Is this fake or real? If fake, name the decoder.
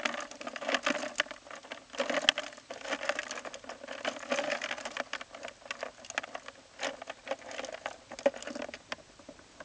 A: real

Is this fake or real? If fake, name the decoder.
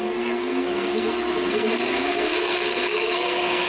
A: fake, codec, SNAC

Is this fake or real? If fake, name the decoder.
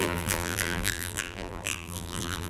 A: fake, vocoder, BigVGAN v2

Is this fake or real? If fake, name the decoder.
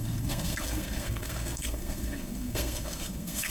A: fake, codec, SNAC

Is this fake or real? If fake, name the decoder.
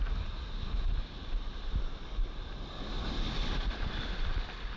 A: real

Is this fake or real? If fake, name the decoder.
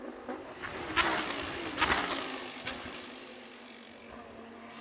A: real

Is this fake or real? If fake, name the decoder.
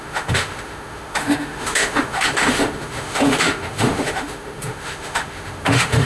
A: fake, autoencoder, DAC-VAE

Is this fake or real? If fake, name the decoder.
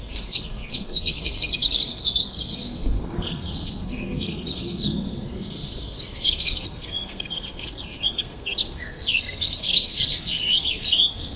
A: fake, codec, SNAC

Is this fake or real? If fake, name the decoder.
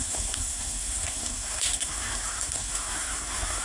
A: fake, codec, SNAC